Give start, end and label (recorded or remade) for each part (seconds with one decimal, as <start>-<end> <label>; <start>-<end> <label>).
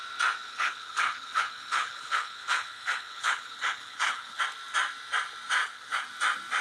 0.0-0.5 recorded; 0.5-4.4 remade; 4.4-5.6 recorded; 5.6-6.1 remade; 6.1-6.6 recorded